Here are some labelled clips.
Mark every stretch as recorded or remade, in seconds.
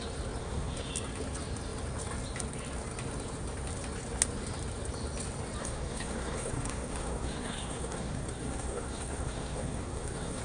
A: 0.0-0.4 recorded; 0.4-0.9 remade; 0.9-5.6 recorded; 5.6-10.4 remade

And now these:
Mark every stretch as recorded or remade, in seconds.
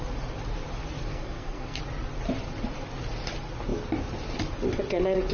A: 0.0-1.1 recorded; 1.1-1.8 remade; 1.8-5.3 recorded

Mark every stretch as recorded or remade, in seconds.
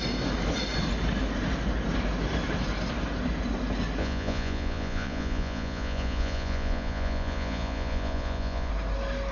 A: 0.0-4.0 recorded; 4.0-8.7 remade; 8.7-9.3 recorded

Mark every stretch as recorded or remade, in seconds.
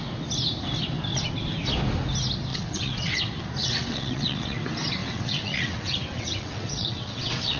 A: 0.0-2.5 recorded; 2.5-3.2 remade; 3.2-3.6 recorded; 3.6-4.6 remade; 4.6-5.0 recorded; 5.0-7.6 remade